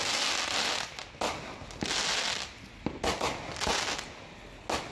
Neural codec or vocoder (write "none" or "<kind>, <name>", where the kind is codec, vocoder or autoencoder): none